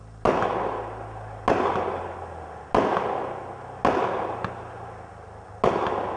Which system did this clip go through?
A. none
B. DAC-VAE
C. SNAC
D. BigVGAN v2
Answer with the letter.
A